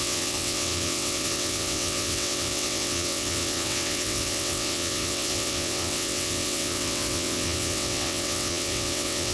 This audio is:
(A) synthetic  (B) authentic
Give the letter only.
A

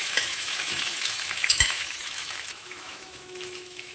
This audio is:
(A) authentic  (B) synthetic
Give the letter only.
B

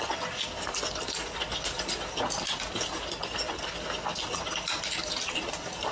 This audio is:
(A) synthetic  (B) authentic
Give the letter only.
B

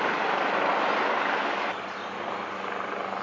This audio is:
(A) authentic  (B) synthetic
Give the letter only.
A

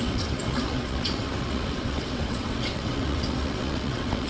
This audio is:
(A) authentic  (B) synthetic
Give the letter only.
B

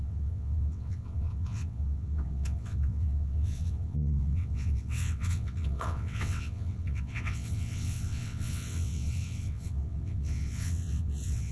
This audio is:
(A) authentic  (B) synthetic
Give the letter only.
B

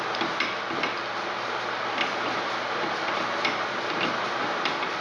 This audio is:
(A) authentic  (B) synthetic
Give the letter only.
B